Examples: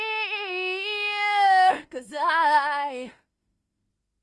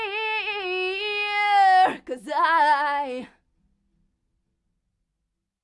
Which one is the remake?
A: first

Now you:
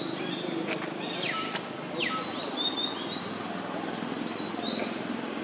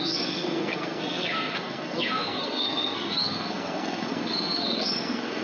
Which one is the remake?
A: second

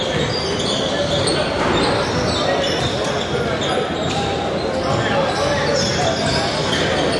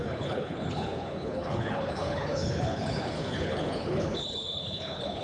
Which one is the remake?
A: second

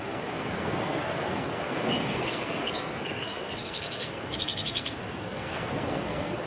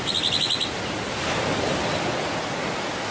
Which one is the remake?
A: first